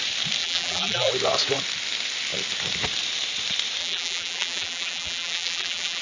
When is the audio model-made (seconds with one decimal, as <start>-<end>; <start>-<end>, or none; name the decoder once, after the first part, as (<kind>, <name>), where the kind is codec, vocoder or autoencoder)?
0.4-1.1 (vocoder, BigVGAN v2); 3.8-6.0